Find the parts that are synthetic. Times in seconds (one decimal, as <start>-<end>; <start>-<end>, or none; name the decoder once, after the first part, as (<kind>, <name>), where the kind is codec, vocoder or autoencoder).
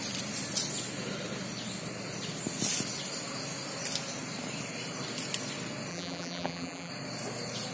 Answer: 5.9-6.9 (vocoder, BigVGAN v2)